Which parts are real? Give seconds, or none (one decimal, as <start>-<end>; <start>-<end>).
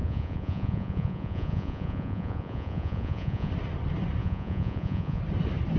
3.5-4.2; 5.2-5.8